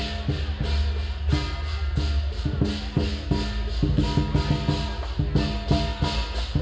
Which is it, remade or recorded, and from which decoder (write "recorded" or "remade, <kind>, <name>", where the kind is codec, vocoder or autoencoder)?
recorded